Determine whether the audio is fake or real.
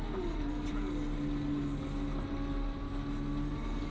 real